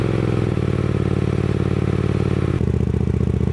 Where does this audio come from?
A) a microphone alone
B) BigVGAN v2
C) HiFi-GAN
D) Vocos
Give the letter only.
A